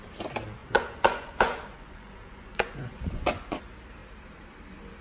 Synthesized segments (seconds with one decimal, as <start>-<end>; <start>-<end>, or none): 0.6-3.6